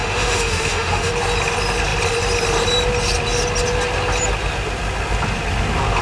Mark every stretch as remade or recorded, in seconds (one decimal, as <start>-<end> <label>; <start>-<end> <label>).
0.0-1.1 remade; 1.1-6.0 recorded